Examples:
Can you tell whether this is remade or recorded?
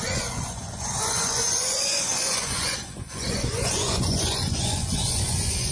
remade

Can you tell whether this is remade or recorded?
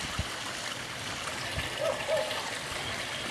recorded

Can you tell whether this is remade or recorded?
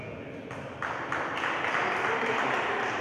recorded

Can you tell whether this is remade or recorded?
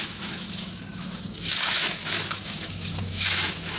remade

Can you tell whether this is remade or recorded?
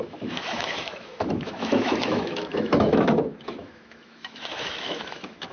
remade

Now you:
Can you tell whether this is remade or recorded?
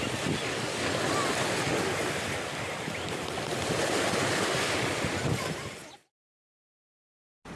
recorded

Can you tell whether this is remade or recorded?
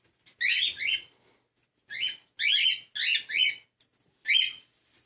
recorded